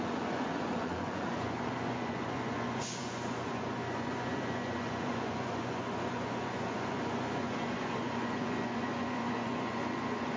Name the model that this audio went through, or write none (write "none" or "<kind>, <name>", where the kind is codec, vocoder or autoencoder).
vocoder, Vocos